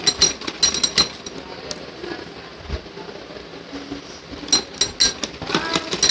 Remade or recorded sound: recorded